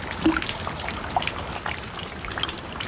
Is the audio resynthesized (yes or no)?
no